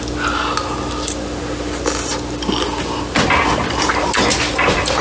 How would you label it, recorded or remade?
recorded